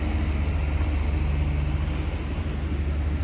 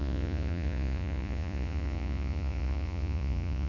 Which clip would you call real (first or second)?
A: first